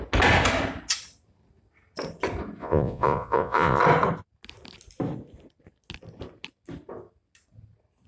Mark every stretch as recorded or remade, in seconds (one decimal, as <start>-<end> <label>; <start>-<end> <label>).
0.0-2.6 recorded; 2.6-3.8 remade; 3.8-8.1 recorded